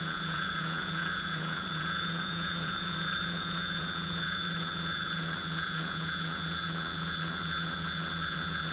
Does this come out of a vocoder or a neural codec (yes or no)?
yes